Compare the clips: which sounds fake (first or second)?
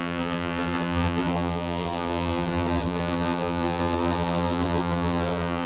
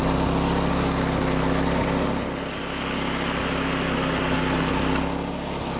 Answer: first